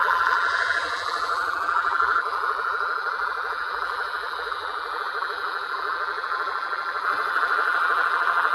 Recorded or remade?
remade